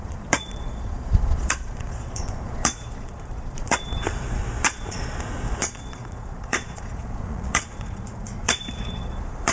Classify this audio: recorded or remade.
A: remade